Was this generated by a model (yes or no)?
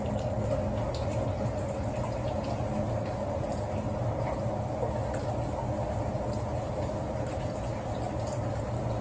no